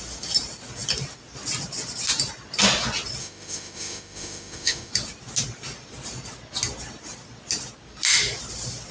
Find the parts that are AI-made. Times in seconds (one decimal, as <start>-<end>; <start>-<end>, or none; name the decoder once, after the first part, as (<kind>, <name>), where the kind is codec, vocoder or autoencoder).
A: 3.2-4.9 (autoencoder, DAC-VAE)

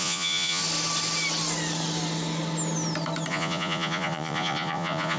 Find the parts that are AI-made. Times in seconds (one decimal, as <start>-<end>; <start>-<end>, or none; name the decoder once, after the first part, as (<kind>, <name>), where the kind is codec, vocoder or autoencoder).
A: 0.0-0.6 (vocoder, Vocos); 3.3-5.2

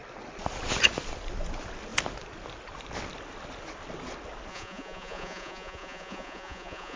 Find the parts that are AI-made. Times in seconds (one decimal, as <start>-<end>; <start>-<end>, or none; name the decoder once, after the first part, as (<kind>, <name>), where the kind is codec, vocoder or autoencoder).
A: 4.5-7.0 (vocoder, Vocos)

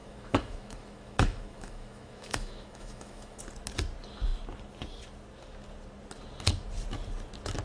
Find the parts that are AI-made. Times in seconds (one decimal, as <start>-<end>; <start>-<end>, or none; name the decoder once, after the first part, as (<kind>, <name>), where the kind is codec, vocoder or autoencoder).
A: 0.0-3.4 (autoencoder, DAC-VAE)

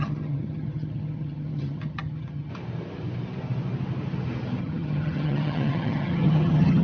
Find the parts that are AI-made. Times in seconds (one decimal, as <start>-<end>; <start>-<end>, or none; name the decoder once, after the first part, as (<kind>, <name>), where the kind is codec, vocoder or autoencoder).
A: 0.0-2.5 (vocoder, HiFi-GAN); 4.6-6.8

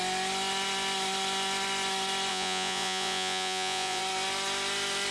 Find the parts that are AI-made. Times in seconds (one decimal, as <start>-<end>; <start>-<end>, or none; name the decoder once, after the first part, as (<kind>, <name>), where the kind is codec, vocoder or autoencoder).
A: 2.3-4.0 (vocoder, Vocos)

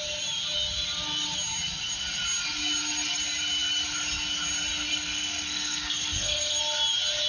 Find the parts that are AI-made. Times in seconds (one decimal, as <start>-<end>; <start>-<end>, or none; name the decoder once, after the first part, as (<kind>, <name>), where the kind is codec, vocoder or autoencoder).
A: 4.9-6.6 (codec, SNAC)